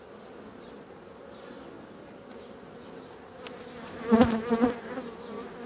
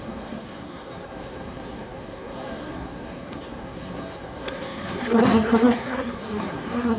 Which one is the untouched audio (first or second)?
first